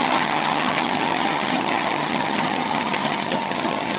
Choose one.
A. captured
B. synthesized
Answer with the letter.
B